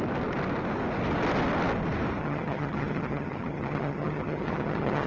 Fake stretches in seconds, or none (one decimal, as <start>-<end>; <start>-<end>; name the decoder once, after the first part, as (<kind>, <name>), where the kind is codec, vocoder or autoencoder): 2.2-5.1 (vocoder, HiFi-GAN)